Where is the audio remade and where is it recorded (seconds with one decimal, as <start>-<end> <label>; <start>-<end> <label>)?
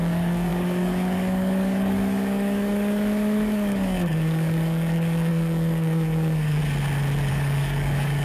0.0-6.6 remade; 6.6-7.3 recorded; 7.3-8.2 remade